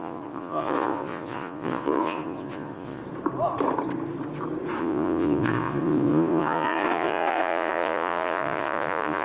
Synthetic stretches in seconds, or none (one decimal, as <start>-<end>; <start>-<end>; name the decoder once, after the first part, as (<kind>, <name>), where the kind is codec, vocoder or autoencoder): 0.0-3.0 (vocoder, Vocos); 4.8-9.2